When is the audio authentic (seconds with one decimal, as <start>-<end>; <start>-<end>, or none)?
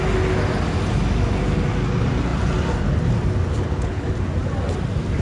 0.0-3.5; 4.1-5.2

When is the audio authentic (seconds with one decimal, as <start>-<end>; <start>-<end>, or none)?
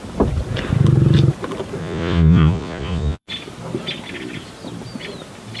0.0-1.8; 3.3-5.6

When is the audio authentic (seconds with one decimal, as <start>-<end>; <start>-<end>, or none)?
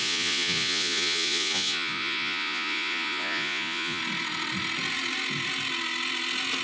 4.0-6.6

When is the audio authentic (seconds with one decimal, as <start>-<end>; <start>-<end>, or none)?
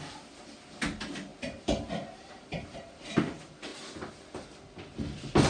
0.0-1.3; 3.2-5.5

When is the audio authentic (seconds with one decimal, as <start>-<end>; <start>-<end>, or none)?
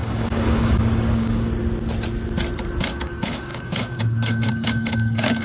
1.5-2.8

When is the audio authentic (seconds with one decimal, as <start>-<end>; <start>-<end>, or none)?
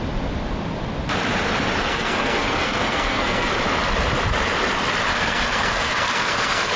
0.0-1.8; 3.5-5.1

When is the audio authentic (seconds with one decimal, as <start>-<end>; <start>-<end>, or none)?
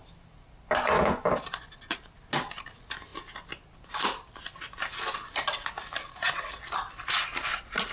0.0-7.9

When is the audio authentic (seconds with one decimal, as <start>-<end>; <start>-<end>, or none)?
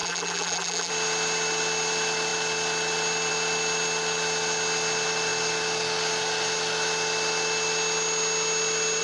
0.9-9.0